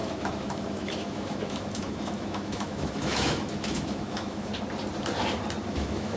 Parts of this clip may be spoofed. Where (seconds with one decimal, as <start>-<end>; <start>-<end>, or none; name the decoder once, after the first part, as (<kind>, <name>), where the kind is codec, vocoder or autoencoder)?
0.0-4.5 (autoencoder, DAC-VAE); 5.7-6.2